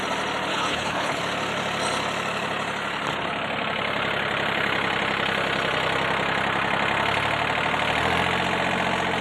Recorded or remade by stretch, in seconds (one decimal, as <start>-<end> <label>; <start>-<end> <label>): 0.0-0.5 recorded; 0.5-1.2 remade; 1.2-9.2 recorded

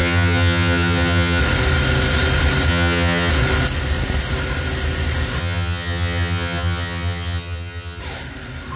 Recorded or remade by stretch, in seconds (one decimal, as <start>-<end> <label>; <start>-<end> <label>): 0.0-1.4 remade; 1.4-2.7 recorded; 2.7-3.3 remade; 3.3-5.4 recorded; 5.4-8.0 remade; 8.0-8.8 recorded

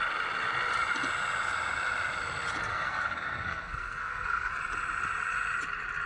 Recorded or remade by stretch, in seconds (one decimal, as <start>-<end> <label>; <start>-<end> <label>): 0.0-2.7 recorded; 2.7-4.5 remade; 4.5-6.1 recorded